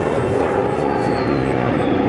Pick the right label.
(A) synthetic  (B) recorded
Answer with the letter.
A